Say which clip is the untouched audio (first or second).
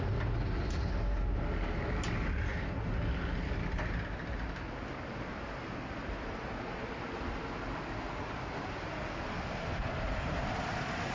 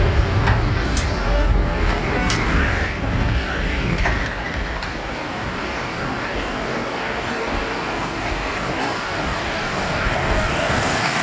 first